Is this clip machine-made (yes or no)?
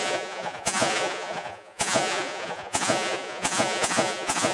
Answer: yes